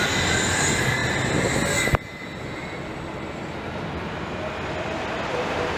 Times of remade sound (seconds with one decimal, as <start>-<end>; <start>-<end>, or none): none